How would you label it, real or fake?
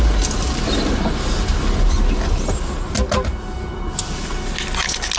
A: real